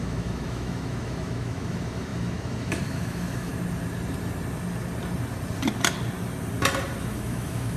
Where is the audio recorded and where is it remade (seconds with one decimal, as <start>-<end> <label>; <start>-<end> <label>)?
0.0-3.5 remade; 3.5-7.0 recorded; 7.0-7.8 remade